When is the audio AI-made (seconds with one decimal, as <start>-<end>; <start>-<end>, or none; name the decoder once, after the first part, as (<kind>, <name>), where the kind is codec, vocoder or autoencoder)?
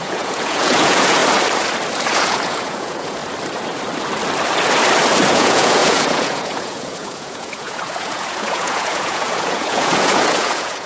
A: 0.0-1.2 (vocoder, Vocos); 2.1-3.2; 5.3-10.9